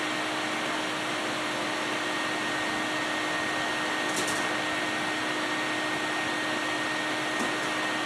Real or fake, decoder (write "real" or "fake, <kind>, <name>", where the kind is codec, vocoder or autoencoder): real